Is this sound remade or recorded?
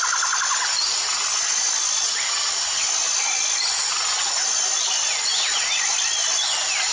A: recorded